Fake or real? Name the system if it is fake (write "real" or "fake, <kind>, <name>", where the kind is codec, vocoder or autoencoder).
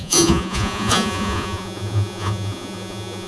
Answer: fake, vocoder, Vocos